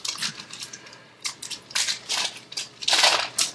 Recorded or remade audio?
recorded